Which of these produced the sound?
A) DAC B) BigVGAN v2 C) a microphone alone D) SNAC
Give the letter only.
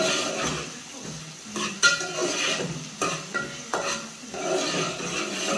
C